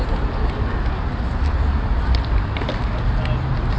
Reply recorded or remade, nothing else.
recorded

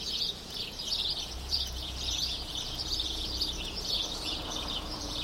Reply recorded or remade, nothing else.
remade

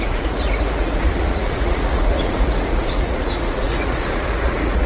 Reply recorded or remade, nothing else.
remade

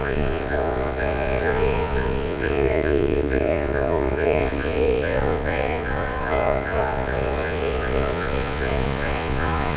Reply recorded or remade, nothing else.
remade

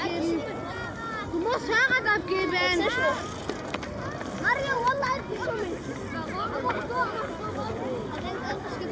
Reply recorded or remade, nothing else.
recorded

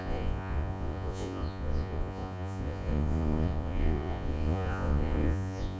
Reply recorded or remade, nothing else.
remade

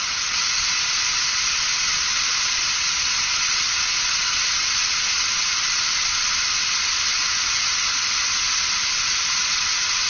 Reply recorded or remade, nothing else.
remade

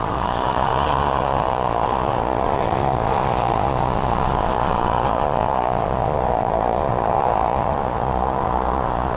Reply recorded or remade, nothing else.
remade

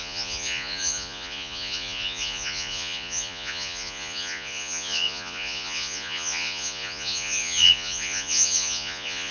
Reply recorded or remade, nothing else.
remade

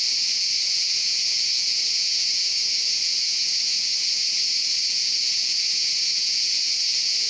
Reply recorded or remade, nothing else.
remade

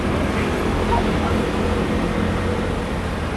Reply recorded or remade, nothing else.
recorded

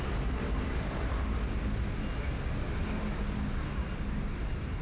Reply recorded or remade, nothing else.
recorded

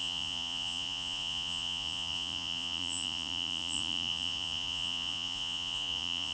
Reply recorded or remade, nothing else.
remade